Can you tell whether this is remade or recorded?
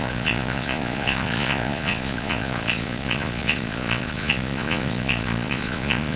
remade